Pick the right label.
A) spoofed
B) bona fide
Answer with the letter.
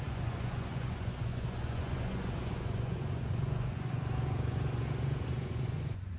A